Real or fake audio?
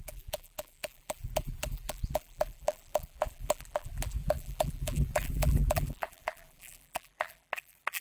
fake